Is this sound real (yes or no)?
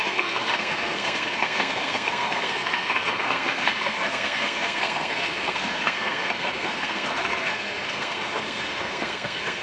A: no